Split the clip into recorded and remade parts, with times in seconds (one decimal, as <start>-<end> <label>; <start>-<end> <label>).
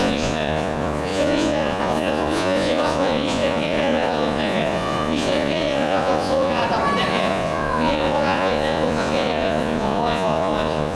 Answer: 0.0-6.6 remade; 6.6-7.1 recorded; 7.1-10.9 remade